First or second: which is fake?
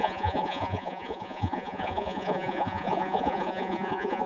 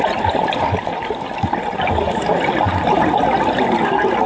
first